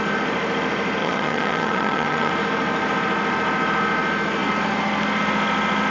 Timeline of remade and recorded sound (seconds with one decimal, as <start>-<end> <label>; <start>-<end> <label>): 0.0-1.0 recorded; 1.0-2.3 remade; 2.3-5.9 recorded